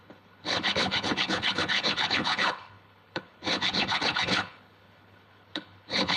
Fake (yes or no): yes